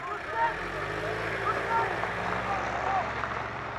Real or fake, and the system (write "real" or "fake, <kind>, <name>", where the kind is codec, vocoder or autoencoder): real